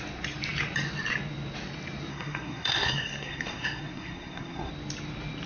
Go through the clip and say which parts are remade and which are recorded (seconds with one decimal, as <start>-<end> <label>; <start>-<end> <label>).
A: 0.0-2.1 recorded; 2.1-4.7 remade; 4.7-5.5 recorded